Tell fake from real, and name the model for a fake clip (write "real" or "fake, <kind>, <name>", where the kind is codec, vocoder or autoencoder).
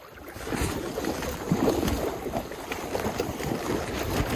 real